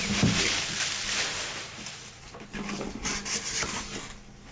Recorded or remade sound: recorded